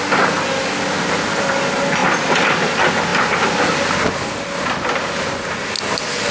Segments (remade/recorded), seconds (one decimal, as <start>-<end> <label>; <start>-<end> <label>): 0.0-6.3 recorded